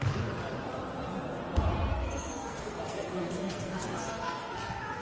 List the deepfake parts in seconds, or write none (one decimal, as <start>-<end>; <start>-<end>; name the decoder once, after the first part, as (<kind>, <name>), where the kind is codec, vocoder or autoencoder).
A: 1.9-5.0 (codec, SNAC)